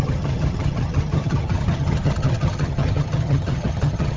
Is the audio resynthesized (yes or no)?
yes